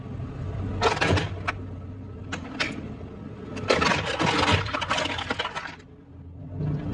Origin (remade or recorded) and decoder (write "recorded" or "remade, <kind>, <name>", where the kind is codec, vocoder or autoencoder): recorded